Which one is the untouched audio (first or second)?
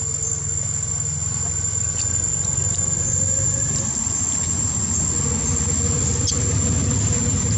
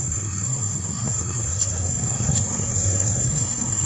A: first